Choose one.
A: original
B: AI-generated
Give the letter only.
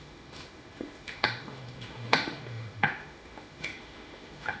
B